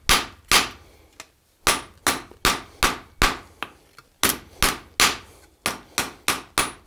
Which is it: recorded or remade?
recorded